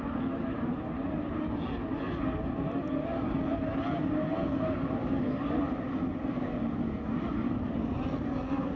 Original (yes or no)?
yes